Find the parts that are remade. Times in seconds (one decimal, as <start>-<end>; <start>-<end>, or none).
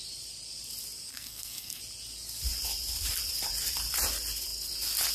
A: 1.1-1.8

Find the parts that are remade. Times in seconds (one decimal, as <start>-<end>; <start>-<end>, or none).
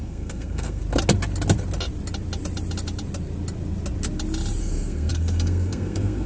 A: 0.0-0.8; 4.6-6.3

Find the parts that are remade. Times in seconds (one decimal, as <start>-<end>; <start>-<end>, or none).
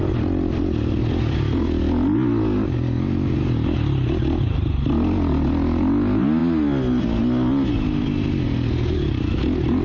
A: none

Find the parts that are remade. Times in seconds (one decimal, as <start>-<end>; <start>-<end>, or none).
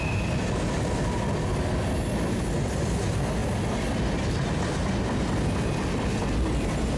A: none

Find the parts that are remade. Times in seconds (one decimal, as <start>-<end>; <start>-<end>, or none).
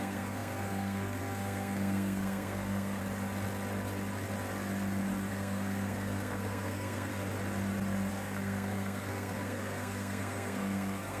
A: 0.0-3.0; 5.3-7.1; 8.1-11.2